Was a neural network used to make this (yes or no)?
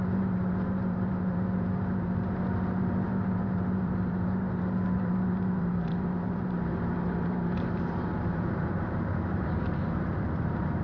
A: yes